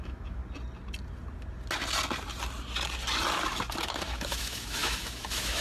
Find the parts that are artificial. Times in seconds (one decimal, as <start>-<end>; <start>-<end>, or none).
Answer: 0.0-0.4; 3.8-5.6